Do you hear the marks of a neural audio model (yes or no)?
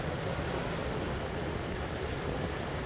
yes